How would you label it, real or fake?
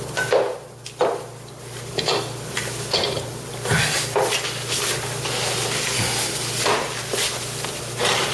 real